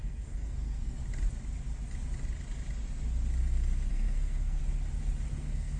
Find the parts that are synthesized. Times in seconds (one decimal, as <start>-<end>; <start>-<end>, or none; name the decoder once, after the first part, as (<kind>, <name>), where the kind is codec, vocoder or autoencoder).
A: 0.0-1.0 (codec, SNAC); 3.9-4.6; 5.3-5.8